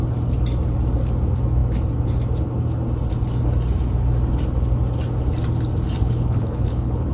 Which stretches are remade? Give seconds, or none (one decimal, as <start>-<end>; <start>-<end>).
6.0-7.1